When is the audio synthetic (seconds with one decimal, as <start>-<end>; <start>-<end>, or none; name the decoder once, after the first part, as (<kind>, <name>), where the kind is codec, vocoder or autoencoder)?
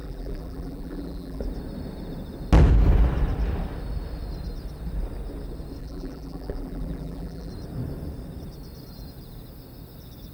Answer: 0.0-1.4 (vocoder, BigVGAN v2); 5.8-7.5